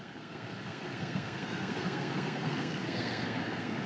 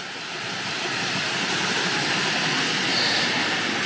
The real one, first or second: second